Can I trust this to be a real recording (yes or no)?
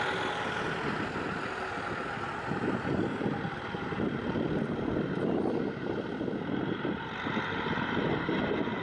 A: yes